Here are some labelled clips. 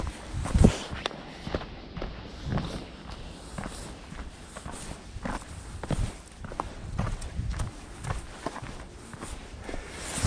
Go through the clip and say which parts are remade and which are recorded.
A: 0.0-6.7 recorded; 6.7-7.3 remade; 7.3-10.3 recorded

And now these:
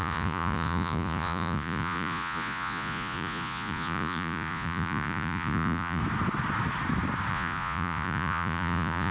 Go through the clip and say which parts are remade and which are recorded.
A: 0.0-6.0 remade; 6.0-7.3 recorded; 7.3-9.1 remade

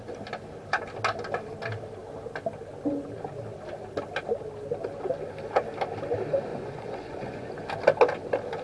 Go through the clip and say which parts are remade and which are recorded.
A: 0.0-6.5 recorded; 6.5-7.5 remade; 7.5-8.6 recorded

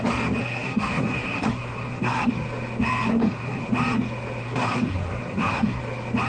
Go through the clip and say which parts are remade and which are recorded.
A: 0.0-0.4 recorded; 0.4-2.3 remade; 2.3-3.1 recorded; 3.1-3.6 remade; 3.6-4.4 recorded; 4.4-5.8 remade; 5.8-6.3 recorded

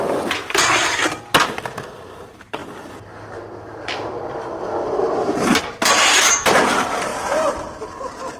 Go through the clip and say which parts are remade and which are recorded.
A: 0.0-1.0 remade; 1.0-2.0 recorded; 2.0-2.6 remade; 2.6-5.0 recorded; 5.0-8.4 remade